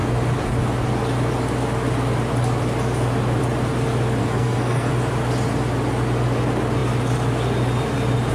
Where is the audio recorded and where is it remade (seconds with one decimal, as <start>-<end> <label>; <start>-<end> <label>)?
0.0-4.2 recorded; 4.2-4.9 remade; 4.9-8.3 recorded